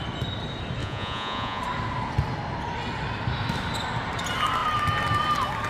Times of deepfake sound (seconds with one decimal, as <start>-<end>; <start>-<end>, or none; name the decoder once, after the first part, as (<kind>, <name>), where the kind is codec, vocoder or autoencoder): 0.8-1.6 (vocoder, Vocos)